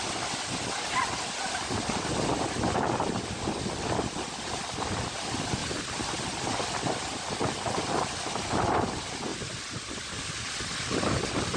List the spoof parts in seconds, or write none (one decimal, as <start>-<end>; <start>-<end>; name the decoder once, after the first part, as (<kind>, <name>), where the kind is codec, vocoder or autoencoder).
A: none